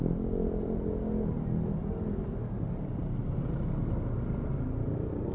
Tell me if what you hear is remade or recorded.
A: recorded